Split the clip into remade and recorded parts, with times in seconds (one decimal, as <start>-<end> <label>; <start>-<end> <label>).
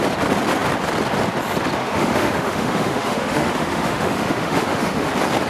0.0-1.8 recorded; 1.8-5.1 remade; 5.1-5.5 recorded